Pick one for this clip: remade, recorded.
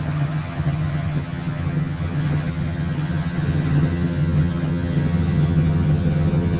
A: remade